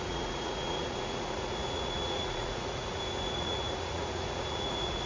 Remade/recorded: remade